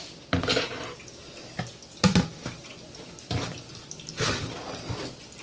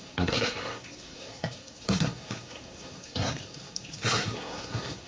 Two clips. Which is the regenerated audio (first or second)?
second